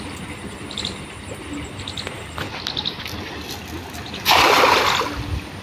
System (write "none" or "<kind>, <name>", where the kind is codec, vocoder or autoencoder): none